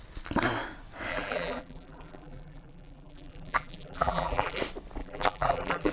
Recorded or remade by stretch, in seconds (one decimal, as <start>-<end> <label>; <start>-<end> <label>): 0.0-1.1 recorded; 1.1-4.6 remade; 4.6-5.0 recorded; 5.0-5.9 remade